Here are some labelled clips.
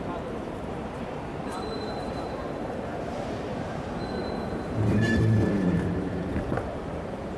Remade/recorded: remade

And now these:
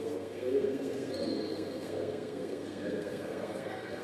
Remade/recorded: remade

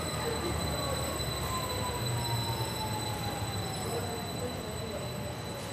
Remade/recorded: recorded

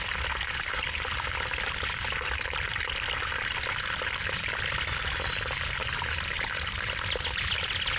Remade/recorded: recorded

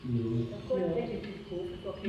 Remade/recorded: recorded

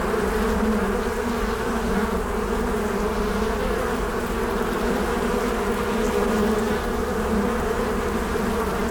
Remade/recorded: recorded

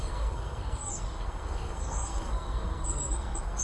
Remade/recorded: remade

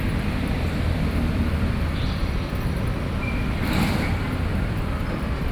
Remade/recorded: remade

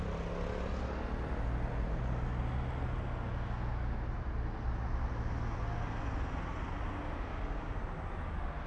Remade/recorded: recorded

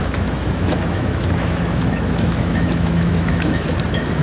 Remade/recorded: remade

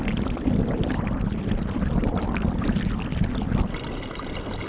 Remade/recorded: recorded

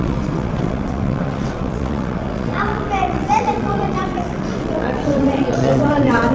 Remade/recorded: remade